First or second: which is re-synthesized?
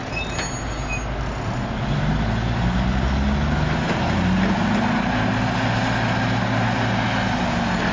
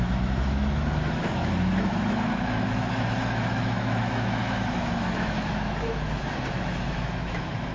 second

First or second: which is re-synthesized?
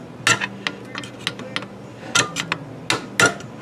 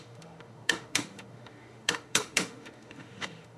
second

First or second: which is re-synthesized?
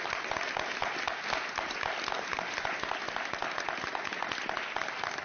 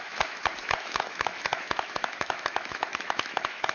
second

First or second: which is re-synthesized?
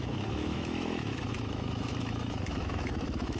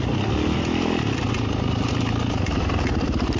first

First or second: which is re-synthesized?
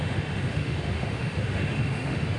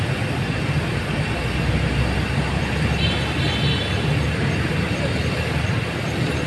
first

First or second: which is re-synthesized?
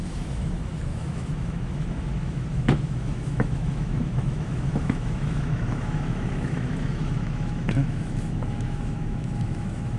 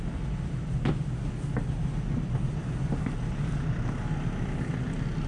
first